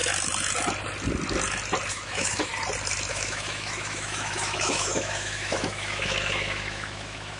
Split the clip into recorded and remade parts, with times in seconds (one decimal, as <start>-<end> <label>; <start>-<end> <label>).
0.0-1.9 recorded; 1.9-2.5 remade; 2.5-3.1 recorded; 3.1-7.4 remade